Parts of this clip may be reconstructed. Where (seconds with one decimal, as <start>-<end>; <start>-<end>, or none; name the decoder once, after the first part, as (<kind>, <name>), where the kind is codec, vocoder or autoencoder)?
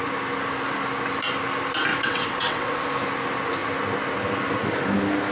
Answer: 1.9-2.8 (vocoder, WaveNeXt)